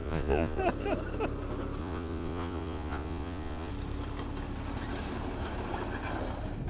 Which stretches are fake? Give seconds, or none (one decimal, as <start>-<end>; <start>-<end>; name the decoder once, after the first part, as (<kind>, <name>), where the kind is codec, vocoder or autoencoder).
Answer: 0.0-0.6 (vocoder, Vocos); 1.8-3.7